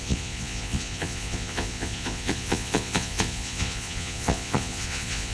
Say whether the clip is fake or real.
fake